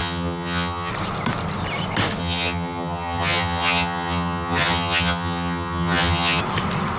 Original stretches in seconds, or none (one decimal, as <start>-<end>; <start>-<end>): 0.9-2.2; 6.4-7.0